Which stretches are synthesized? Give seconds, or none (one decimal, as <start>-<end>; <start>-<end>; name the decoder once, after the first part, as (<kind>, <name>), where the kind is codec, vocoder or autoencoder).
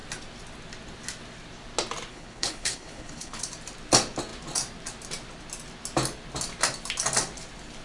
2.1-3.4 (codec, HILCodec)